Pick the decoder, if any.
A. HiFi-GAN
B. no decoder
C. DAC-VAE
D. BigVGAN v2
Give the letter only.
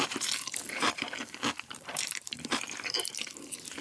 D